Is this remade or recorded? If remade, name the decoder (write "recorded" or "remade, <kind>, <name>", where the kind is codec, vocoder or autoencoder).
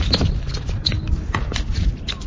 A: recorded